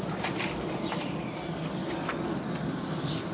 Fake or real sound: real